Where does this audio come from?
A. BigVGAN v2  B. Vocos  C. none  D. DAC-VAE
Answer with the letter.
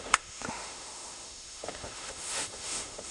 D